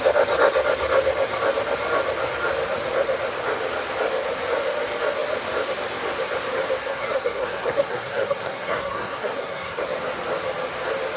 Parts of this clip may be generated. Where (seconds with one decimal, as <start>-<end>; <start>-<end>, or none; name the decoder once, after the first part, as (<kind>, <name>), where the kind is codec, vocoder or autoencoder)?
6.8-9.8 (codec, SNAC)